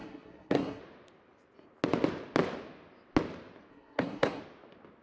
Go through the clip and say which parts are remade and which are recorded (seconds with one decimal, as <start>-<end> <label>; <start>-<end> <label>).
0.0-0.8 remade; 0.8-3.7 recorded; 3.7-4.4 remade; 4.4-5.0 recorded